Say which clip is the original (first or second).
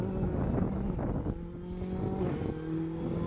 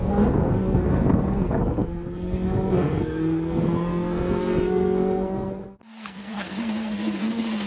first